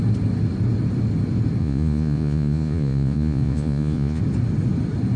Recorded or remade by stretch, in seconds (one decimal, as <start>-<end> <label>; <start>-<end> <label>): 0.0-1.6 recorded; 1.6-4.2 remade; 4.2-5.2 recorded